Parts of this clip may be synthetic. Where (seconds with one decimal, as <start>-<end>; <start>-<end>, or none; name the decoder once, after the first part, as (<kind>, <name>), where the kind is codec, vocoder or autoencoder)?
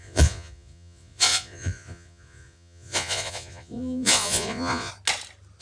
0.0-4.9 (vocoder, Vocos)